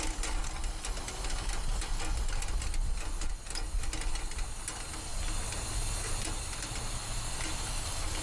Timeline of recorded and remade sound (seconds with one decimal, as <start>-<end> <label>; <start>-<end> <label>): 0.0-8.2 recorded